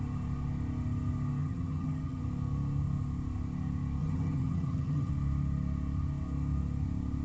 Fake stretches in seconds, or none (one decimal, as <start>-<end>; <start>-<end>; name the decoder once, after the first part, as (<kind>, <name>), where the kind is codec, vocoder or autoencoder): 1.4-2.2 (vocoder, HiFi-GAN); 4.0-5.1